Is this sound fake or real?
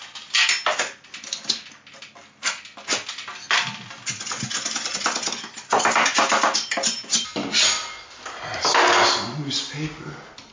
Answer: real